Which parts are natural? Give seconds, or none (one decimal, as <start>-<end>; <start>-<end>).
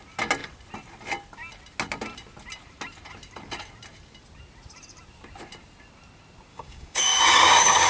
0.0-6.5